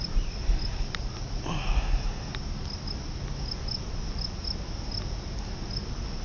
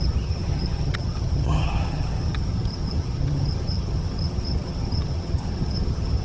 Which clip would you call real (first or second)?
first